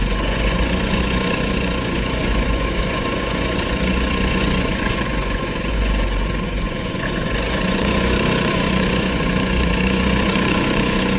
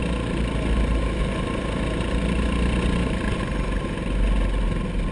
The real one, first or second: second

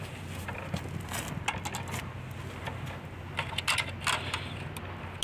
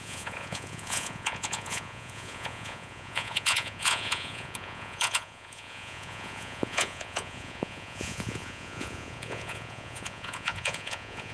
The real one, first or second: first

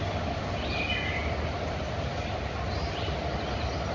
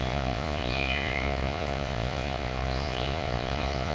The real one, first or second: first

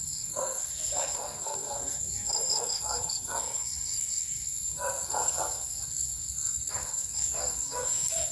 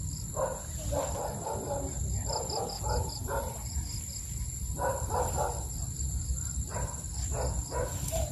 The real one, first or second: second